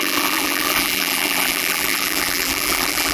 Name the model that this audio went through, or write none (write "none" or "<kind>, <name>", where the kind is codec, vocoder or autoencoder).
vocoder, BigVGAN v2